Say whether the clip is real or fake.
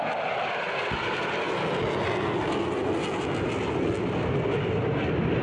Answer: real